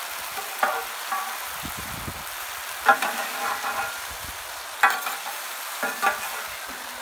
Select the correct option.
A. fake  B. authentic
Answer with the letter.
B